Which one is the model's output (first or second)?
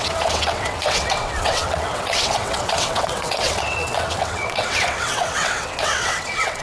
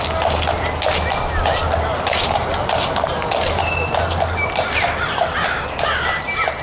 first